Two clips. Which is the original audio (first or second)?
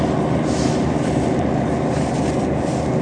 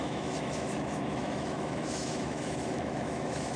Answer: first